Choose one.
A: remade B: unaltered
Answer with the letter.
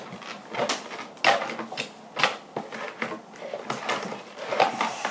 B